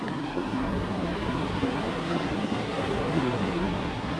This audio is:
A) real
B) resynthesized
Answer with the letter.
B